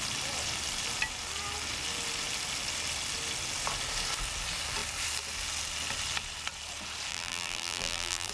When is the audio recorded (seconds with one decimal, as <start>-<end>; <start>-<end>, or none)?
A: 0.0-7.1